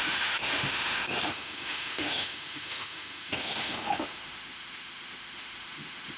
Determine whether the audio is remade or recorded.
remade